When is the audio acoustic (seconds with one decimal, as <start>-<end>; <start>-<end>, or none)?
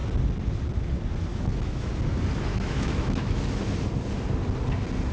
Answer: 0.0-1.3; 1.9-2.5; 3.6-5.1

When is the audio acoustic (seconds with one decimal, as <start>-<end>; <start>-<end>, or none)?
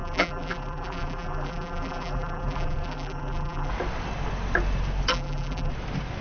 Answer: 3.7-5.1; 5.7-6.2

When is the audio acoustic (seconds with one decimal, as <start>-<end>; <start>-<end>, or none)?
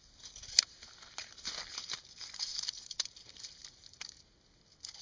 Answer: 0.0-2.5; 4.2-5.0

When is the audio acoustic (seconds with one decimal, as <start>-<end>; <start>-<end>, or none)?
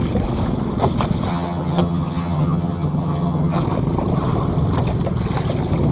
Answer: 0.0-1.3; 3.6-5.9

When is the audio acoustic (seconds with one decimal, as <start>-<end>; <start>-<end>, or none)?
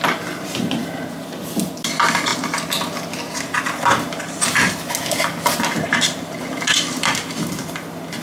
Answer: 0.0-8.2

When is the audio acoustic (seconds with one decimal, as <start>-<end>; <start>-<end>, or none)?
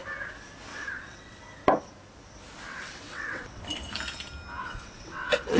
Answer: 0.0-0.7; 1.4-2.7; 3.6-4.6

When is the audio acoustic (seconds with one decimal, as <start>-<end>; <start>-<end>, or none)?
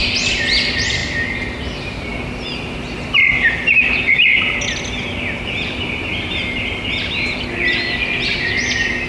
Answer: 0.0-9.1